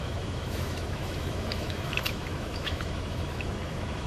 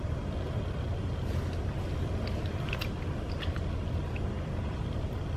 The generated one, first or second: first